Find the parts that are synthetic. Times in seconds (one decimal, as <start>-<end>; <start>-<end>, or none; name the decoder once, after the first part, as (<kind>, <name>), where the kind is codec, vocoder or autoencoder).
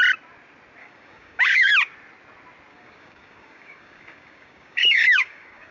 0.8-1.7 (codec, DAC); 2.7-5.7